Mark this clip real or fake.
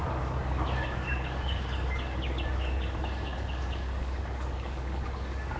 fake